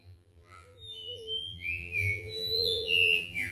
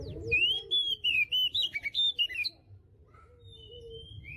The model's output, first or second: first